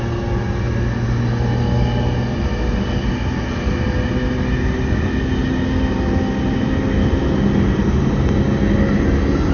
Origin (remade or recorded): recorded